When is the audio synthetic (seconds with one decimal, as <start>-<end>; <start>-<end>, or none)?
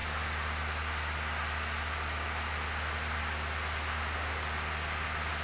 none